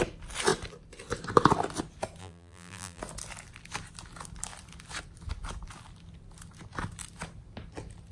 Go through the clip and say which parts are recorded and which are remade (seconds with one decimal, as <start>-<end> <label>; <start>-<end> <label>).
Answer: 0.0-2.2 recorded; 2.2-3.0 remade; 3.0-8.1 recorded